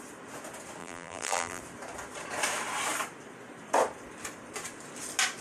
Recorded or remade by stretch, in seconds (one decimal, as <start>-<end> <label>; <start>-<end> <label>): 0.0-0.8 recorded; 0.8-1.6 remade; 1.6-5.4 recorded